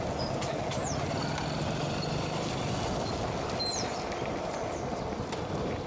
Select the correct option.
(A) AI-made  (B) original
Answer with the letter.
B